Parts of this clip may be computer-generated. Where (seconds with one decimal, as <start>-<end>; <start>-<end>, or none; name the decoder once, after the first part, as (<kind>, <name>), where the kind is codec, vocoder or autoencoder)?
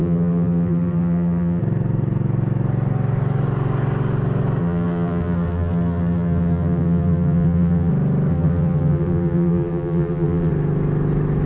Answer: 0.0-1.6 (vocoder, BigVGAN v2); 4.6-7.9; 8.3-10.5